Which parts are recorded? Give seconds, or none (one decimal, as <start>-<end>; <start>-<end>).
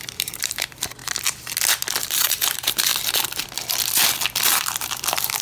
1.0-2.1; 2.9-4.6